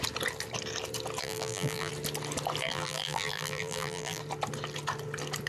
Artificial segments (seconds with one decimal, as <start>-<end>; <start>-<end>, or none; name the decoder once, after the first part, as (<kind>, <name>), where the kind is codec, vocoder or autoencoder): 1.2-1.9 (vocoder, BigVGAN v2); 2.6-4.2